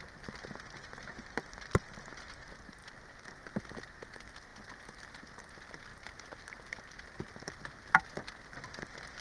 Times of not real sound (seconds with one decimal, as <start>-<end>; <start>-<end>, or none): none